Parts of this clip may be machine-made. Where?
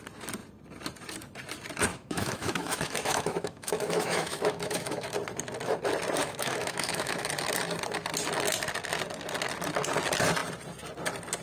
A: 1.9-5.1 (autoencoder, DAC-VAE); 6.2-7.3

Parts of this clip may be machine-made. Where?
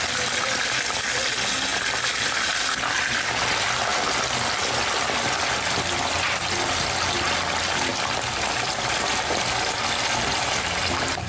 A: 1.7-2.5 (vocoder, BigVGAN v2); 7.9-9.7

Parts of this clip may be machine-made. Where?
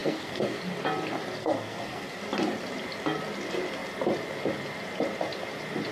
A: 0.0-0.6 (codec, SNAC); 1.4-2.2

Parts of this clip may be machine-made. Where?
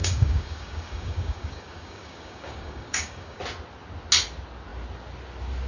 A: 0.0-3.4 (codec, DAC)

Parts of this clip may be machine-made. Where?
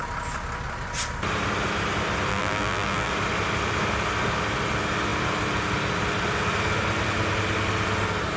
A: 2.3-3.1 (vocoder, BigVGAN v2)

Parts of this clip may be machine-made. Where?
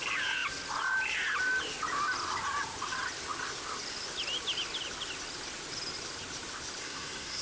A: 6.8-7.4 (codec, SNAC)